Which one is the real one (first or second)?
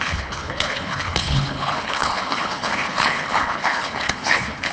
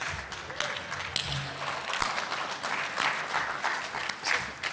second